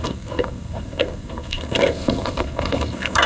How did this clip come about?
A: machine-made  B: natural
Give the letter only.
A